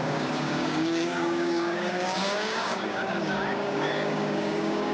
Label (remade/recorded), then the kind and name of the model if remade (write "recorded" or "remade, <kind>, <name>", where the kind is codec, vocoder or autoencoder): remade, codec, DAC